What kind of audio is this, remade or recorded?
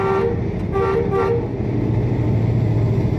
recorded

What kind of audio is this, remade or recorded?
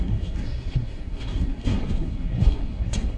remade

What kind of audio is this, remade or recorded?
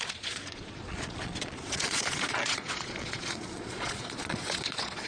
remade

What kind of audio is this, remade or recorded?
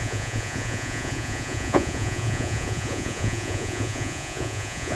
remade